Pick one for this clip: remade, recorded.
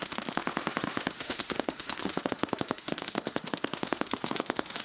remade